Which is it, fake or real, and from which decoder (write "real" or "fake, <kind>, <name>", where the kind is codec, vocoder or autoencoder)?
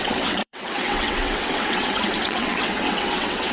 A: fake, vocoder, WaveNeXt